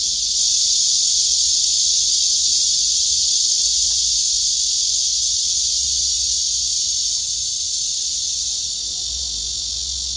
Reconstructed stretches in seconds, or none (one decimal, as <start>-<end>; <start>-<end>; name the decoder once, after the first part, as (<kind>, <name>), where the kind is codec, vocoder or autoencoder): 1.2-4.0 (vocoder, Vocos); 5.1-8.9